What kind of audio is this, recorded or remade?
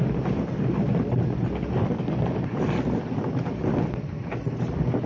remade